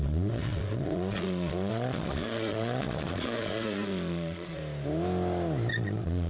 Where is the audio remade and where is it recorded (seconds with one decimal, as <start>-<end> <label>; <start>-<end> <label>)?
0.0-4.6 remade; 4.6-5.7 recorded; 5.7-6.3 remade